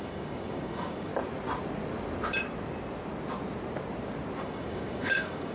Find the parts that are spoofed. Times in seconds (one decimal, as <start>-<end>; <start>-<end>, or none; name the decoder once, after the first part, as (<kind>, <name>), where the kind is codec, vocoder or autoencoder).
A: 0.0-1.1 (codec, DAC); 4.4-5.5